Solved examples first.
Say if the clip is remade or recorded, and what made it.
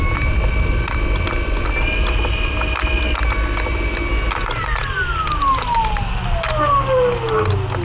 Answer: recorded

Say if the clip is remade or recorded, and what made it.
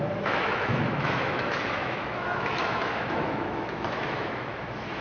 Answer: remade, autoencoder, DAC-VAE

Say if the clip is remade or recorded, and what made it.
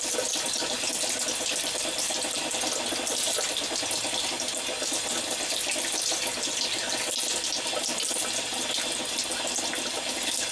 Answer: recorded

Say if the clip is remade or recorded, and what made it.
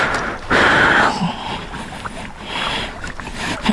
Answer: recorded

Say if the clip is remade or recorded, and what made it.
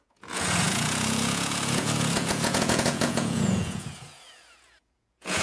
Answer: remade, vocoder, Vocos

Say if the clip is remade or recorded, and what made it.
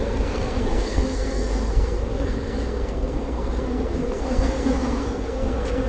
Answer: remade, codec, SNAC